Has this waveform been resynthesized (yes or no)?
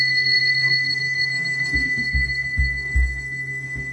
yes